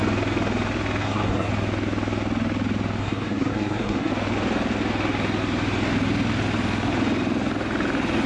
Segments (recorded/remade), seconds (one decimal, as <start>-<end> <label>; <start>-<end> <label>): 0.0-1.0 recorded; 1.0-1.5 remade; 1.5-3.0 recorded; 3.0-4.1 remade; 4.1-8.3 recorded